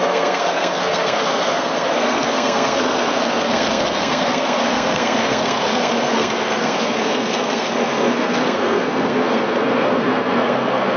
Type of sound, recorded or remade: remade